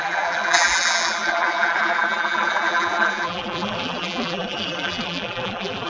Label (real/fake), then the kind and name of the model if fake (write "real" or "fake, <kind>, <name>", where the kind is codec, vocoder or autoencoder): fake, vocoder, BigVGAN v2